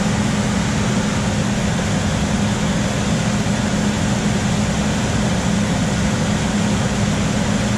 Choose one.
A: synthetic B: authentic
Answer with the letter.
B